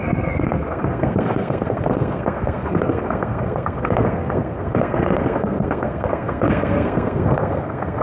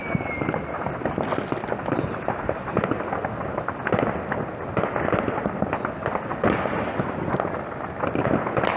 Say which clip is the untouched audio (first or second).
second